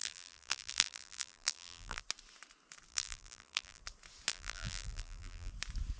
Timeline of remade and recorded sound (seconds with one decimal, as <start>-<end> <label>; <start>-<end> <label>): 0.0-2.0 remade; 2.0-2.9 recorded; 2.9-3.8 remade; 3.8-4.3 recorded; 4.3-5.5 remade; 5.5-6.0 recorded